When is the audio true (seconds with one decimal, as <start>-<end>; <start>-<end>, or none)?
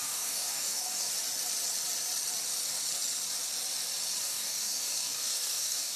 1.1-4.2